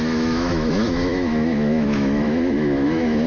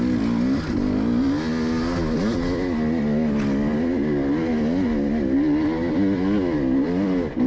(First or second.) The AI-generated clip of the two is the first